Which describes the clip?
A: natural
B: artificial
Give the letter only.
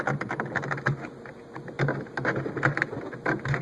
A